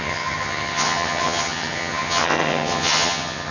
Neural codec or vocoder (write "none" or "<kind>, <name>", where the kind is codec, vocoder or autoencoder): vocoder, HiFi-GAN